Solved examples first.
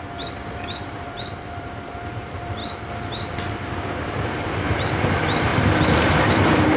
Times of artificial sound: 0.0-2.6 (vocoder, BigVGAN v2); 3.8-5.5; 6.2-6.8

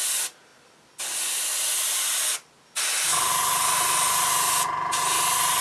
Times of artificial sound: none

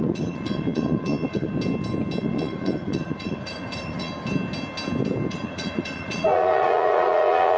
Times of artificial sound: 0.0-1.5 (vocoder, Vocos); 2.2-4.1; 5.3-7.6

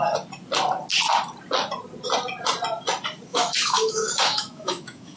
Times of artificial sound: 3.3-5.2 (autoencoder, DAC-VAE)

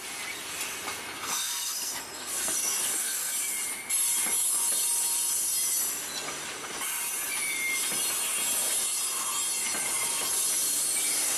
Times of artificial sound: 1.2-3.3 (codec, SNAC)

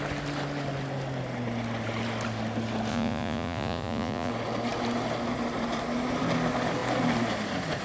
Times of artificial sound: 2.9-4.3 (vocoder, Vocos)

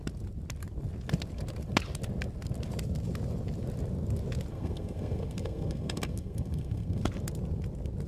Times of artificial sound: 4.5-7.0 (codec, SNAC)